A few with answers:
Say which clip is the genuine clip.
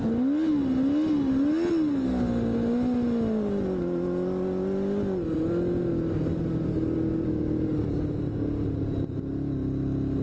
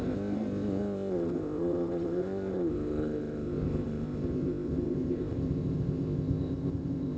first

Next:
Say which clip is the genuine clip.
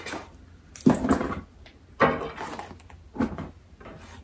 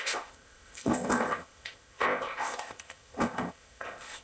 first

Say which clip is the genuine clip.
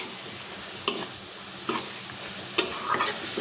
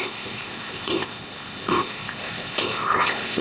first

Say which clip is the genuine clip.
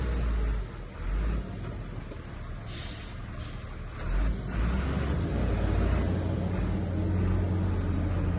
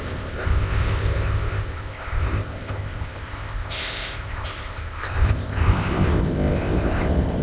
first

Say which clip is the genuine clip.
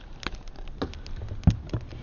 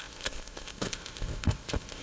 first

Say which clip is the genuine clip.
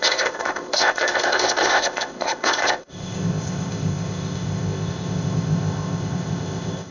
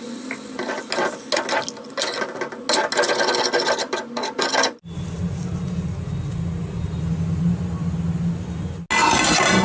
second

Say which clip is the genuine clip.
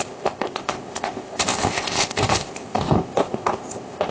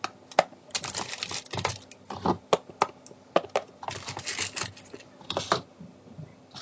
second